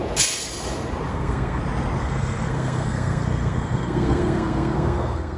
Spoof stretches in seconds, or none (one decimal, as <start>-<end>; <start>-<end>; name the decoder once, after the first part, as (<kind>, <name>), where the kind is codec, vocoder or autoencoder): 1.1-1.6 (codec, SNAC); 2.0-5.4